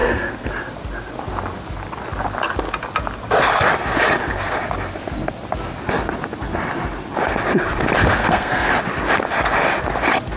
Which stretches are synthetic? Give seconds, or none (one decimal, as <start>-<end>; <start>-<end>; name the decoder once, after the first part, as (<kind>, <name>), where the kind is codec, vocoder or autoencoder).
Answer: 0.0-0.5 (codec, SNAC); 8.2-8.7